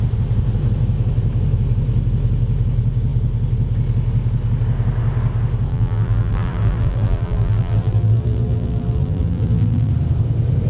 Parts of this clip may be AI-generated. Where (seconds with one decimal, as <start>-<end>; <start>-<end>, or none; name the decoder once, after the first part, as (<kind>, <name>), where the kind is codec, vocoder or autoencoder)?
5.7-9.9 (vocoder, BigVGAN v2)